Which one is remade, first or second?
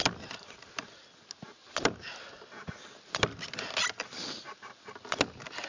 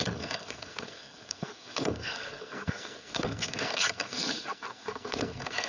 second